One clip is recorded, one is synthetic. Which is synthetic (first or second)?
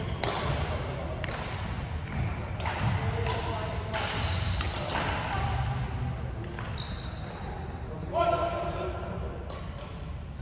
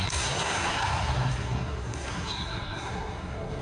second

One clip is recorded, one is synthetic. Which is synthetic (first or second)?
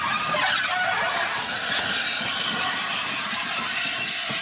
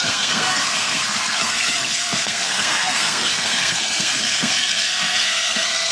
second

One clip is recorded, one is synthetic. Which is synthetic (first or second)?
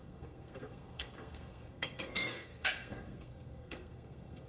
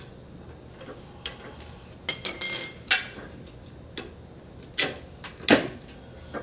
first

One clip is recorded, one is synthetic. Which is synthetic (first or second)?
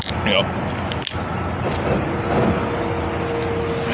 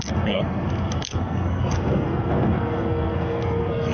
second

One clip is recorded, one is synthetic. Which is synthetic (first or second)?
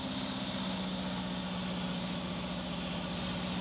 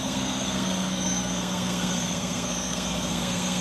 second